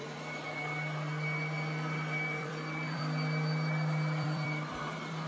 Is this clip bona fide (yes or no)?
no